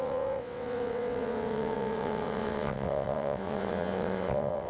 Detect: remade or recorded remade